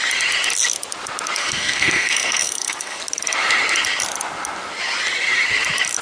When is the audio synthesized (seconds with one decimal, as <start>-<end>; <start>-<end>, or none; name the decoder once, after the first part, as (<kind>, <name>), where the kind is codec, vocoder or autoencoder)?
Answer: 1.4-3.0 (codec, SNAC)